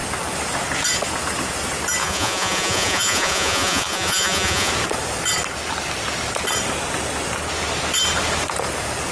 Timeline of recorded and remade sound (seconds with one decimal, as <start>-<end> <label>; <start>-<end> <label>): 0.0-2.0 recorded; 2.0-4.7 remade; 4.7-9.1 recorded